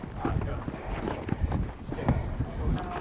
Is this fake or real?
real